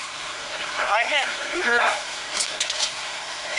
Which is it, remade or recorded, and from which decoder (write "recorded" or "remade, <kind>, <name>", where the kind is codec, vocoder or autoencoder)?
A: remade, codec, SNAC